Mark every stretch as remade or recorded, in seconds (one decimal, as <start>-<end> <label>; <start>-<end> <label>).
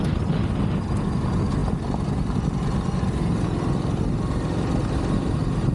0.0-5.7 recorded